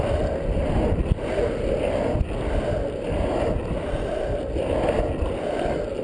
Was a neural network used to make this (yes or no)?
no